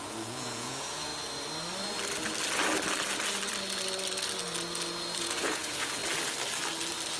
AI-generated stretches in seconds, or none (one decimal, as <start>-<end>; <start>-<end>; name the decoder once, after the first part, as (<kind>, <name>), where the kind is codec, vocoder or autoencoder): 0.0-1.1 (vocoder, Vocos); 5.2-6.0